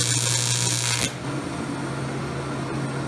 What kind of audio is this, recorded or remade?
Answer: recorded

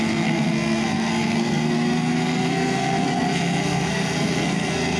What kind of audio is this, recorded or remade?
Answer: remade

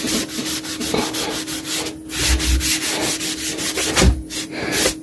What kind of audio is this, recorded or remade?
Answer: recorded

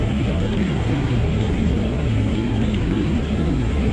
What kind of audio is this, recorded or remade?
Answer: remade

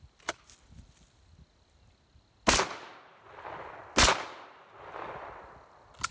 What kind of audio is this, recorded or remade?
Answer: recorded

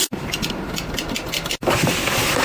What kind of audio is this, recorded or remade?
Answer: recorded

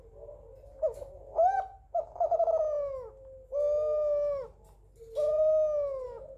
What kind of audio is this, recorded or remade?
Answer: recorded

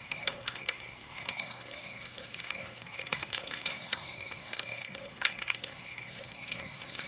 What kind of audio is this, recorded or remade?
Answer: remade